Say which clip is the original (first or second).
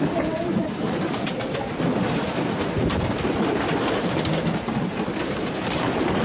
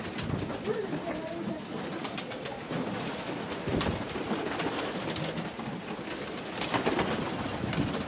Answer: second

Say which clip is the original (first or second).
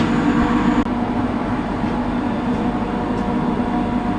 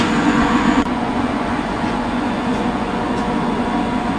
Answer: first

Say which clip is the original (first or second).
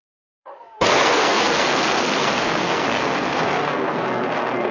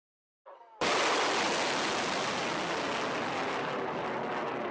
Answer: second